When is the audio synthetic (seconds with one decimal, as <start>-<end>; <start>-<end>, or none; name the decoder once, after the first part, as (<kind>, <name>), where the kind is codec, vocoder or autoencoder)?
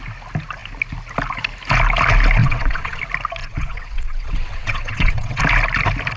2.4-3.0 (vocoder, WaveNeXt); 3.4-5.4